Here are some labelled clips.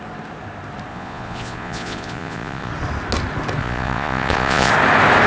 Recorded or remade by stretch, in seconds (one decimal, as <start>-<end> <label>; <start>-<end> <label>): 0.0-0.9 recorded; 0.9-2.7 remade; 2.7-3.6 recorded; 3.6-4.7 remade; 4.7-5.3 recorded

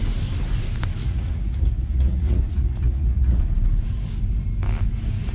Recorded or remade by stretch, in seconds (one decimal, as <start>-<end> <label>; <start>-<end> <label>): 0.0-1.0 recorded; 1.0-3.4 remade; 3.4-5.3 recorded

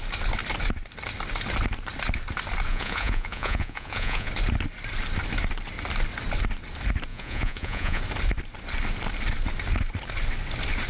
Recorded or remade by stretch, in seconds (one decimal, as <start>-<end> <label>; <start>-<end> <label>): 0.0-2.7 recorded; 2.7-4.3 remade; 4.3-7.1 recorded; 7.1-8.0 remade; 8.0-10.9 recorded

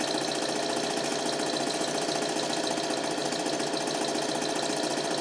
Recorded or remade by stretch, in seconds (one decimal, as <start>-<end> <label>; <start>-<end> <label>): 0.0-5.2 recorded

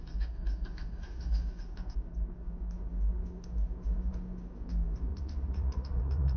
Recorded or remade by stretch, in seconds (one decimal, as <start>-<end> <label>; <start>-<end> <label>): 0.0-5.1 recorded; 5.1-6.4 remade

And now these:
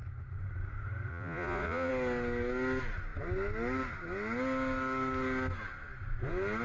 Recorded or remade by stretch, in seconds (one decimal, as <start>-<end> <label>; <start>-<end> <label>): 0.0-1.1 recorded; 1.1-1.9 remade; 1.9-6.6 recorded

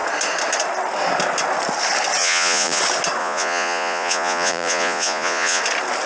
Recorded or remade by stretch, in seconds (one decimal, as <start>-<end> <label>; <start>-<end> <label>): 0.0-2.2 recorded; 2.2-2.8 remade; 2.8-3.2 recorded; 3.2-5.6 remade; 5.6-6.1 recorded